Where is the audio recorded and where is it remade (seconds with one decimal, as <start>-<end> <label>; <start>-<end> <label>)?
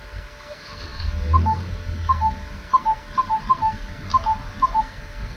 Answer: 0.0-4.1 remade; 4.1-4.8 recorded; 4.8-5.4 remade